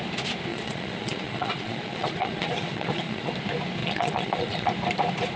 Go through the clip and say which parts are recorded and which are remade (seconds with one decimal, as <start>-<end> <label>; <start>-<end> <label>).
0.0-0.5 recorded; 0.5-3.3 remade; 3.3-3.8 recorded; 3.8-4.7 remade; 4.7-5.4 recorded